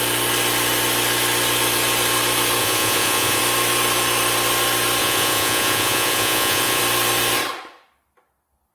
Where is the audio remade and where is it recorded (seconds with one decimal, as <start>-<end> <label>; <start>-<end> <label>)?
0.0-2.6 recorded; 2.6-3.4 remade; 3.4-5.0 recorded; 5.0-6.8 remade; 6.8-8.7 recorded